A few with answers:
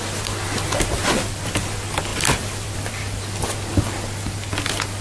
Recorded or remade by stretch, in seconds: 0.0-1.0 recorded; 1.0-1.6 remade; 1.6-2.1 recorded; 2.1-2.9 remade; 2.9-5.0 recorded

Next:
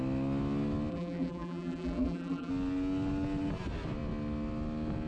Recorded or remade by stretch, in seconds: 0.0-0.9 recorded; 0.9-2.5 remade; 2.5-5.1 recorded

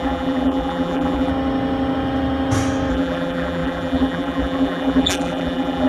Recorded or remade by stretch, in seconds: 0.0-1.3 remade; 1.3-2.9 recorded; 2.9-5.9 remade

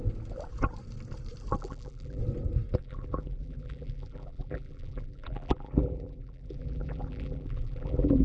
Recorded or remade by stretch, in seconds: 0.0-1.6 recorded; 1.6-2.2 remade; 2.2-2.8 recorded; 2.8-8.2 remade

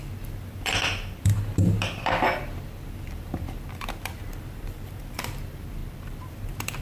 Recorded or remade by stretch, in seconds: 0.0-6.8 remade

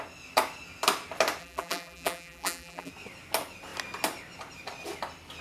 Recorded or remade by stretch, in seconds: 0.0-1.4 recorded; 1.4-2.9 remade; 2.9-5.4 recorded